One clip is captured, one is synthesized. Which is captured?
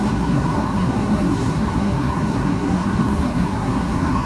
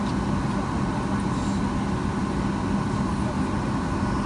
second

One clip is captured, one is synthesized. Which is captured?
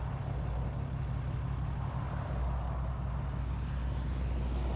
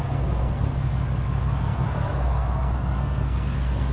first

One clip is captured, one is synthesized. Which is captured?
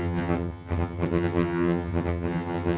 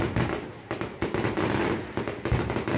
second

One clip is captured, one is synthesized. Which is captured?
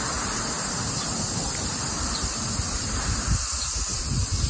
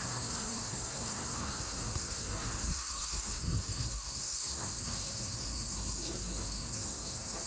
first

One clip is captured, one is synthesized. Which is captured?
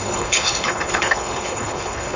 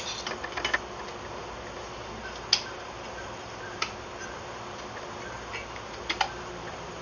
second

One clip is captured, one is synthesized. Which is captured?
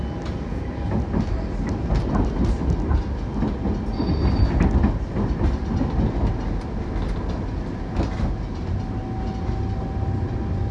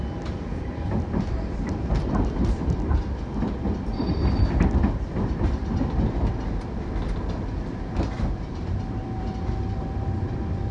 first